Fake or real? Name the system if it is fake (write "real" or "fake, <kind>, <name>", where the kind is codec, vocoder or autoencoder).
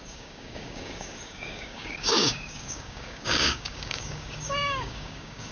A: fake, codec, DAC